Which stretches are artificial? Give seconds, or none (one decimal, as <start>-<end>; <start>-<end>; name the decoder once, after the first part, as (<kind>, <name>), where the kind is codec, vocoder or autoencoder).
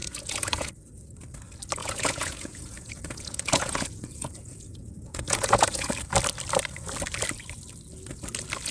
0.0-0.7 (vocoder, Vocos); 1.8-5.9